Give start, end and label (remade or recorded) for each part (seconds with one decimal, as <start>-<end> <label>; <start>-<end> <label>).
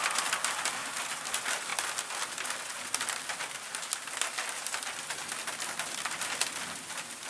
0.0-7.3 recorded